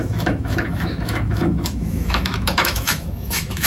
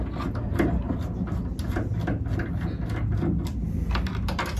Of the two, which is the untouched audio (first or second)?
second